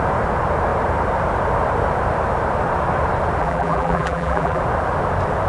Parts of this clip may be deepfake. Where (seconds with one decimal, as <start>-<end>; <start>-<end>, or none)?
3.4-4.6